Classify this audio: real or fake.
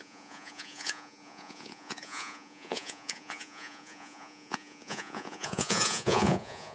fake